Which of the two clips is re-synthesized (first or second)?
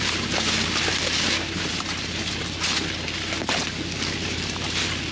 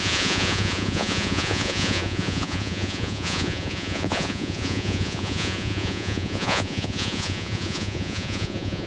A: second